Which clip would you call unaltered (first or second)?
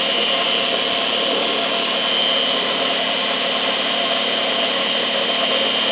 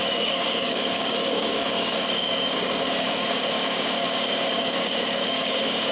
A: first